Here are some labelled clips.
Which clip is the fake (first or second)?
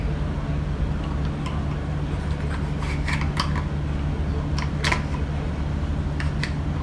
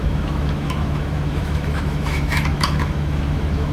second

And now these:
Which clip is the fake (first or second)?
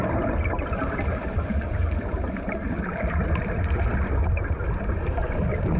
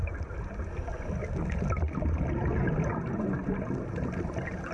first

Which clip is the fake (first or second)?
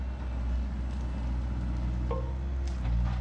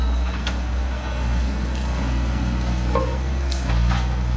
second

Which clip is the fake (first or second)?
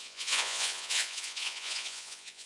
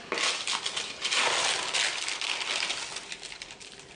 first